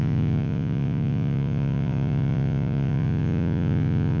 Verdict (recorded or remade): remade